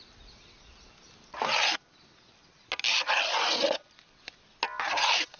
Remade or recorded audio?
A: recorded